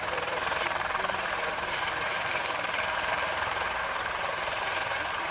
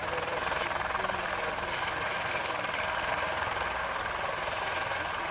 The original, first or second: second